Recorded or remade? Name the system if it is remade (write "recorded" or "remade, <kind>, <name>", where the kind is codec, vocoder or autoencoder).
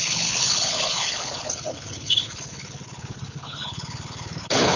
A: remade, codec, HILCodec